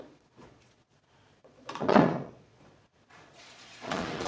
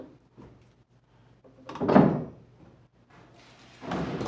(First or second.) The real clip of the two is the second